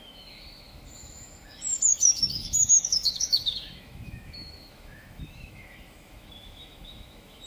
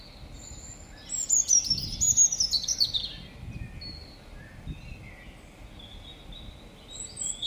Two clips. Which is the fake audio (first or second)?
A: first